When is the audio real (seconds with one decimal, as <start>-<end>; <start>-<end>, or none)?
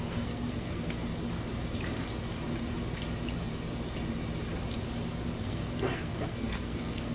1.1-5.4